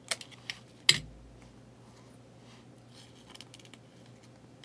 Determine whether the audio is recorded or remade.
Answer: recorded